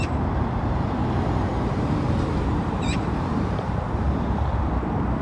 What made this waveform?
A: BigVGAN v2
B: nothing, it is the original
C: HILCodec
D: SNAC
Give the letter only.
A